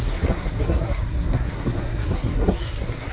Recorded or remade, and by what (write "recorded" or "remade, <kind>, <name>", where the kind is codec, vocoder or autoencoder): remade, codec, SNAC